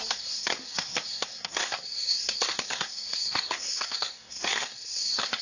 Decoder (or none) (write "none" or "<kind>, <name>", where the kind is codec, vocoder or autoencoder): codec, SNAC